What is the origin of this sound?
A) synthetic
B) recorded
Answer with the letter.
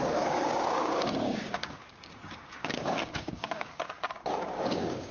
A